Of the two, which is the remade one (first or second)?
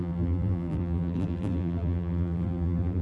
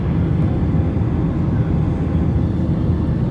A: first